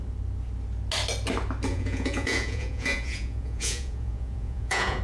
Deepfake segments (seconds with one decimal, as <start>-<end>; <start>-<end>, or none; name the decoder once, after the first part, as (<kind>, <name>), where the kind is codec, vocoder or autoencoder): 1.7-5.0 (vocoder, Vocos)